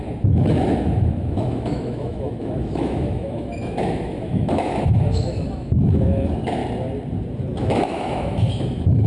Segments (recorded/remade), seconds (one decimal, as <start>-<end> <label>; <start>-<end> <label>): 0.0-6.6 remade; 6.6-7.6 recorded; 7.6-9.1 remade